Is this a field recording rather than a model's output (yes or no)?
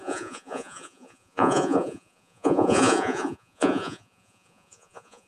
no